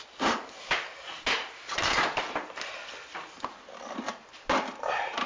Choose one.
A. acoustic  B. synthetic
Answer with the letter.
A